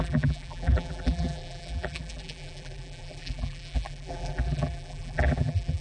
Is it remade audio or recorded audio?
remade